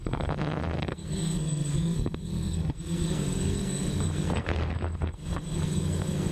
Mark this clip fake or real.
fake